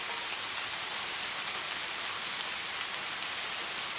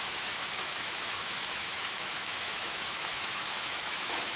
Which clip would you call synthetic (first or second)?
second